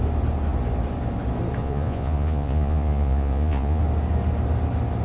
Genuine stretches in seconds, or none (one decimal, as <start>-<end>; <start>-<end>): 0.0-1.6; 3.8-5.0